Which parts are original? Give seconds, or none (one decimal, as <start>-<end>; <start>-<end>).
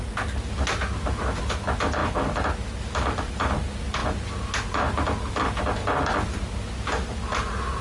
0.0-7.8